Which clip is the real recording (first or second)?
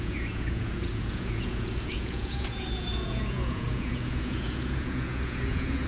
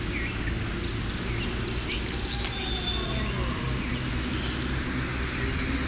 second